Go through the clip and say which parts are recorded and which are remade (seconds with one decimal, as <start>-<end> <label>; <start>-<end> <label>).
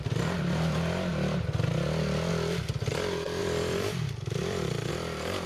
0.0-3.4 recorded; 3.4-4.9 remade; 4.9-5.5 recorded